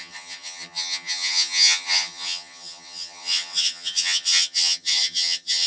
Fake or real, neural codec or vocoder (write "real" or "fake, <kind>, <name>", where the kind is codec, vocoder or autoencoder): fake, vocoder, HiFi-GAN